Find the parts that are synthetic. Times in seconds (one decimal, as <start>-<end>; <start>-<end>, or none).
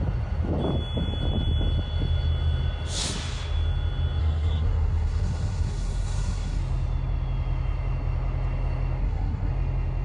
4.2-6.6; 9.0-9.5